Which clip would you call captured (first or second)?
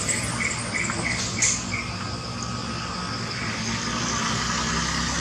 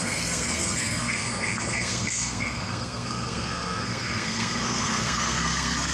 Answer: first